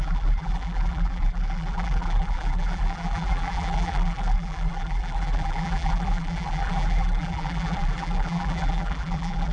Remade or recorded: remade